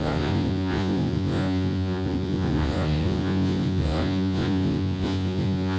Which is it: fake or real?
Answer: fake